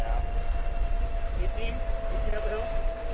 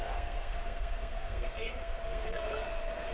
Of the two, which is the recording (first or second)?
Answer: first